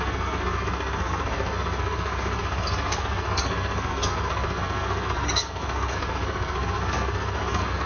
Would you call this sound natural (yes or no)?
no